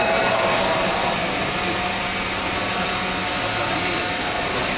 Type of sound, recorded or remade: recorded